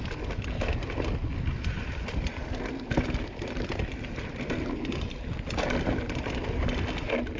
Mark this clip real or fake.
real